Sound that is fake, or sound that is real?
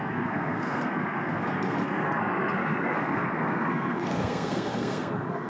fake